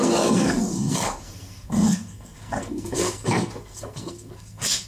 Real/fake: fake